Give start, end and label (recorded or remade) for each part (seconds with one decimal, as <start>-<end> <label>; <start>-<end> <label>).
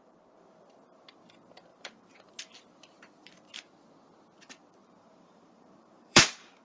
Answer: 0.0-1.7 recorded; 1.7-2.3 remade; 2.3-4.8 recorded; 4.8-6.6 remade